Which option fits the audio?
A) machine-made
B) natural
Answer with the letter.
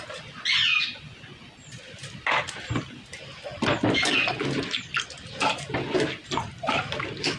B